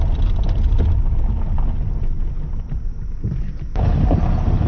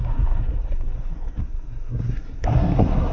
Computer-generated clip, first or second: second